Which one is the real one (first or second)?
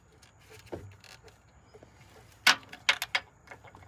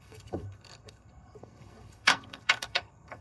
first